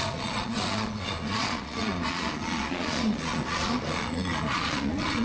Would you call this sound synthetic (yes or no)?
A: yes